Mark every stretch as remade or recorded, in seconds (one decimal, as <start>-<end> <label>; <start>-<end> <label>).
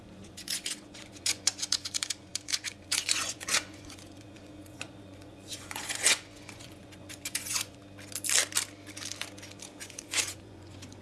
0.0-7.8 remade; 7.8-9.8 recorded; 9.8-11.0 remade